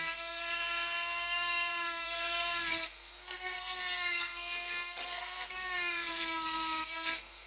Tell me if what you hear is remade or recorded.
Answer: remade